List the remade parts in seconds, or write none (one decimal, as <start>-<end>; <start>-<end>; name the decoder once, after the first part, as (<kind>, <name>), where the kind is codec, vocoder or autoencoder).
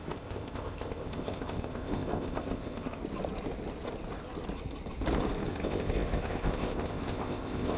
0.0-3.0 (codec, ZipCodec); 5.5-7.8